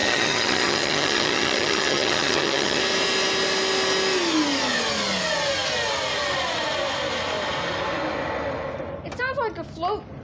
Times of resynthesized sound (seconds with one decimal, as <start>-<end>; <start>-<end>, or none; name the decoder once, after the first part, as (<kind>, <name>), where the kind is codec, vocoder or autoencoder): 0.0-2.8 (vocoder, HiFi-GAN)